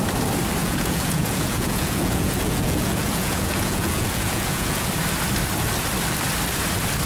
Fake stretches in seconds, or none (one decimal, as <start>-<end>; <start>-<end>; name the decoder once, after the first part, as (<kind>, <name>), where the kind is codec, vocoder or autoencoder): 0.6-4.9 (vocoder, Vocos)